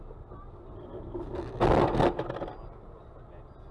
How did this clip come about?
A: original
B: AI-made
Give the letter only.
A